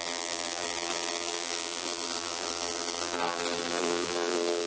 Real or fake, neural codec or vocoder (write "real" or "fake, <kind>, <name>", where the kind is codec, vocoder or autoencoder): fake, vocoder, BigVGAN v2